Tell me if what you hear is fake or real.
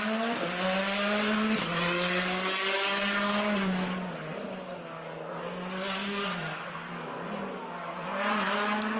real